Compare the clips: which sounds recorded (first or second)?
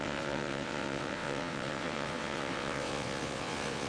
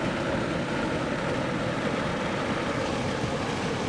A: second